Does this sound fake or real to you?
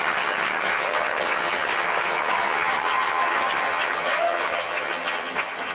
fake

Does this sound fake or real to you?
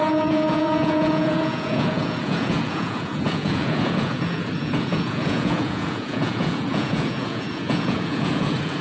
fake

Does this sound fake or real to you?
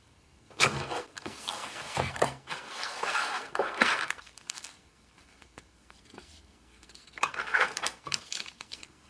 fake